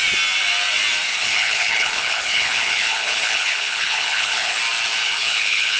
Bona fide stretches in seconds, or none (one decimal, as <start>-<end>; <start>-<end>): 0.0-1.1; 4.6-5.0